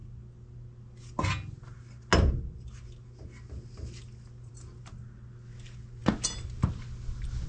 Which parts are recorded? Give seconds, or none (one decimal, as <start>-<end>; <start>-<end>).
0.0-7.5